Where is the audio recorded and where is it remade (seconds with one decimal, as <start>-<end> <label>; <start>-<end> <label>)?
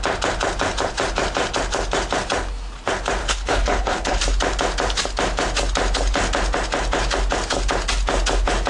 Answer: 0.0-3.2 recorded; 3.2-4.2 remade; 4.2-8.7 recorded